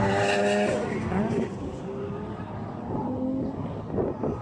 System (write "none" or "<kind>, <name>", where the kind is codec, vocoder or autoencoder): none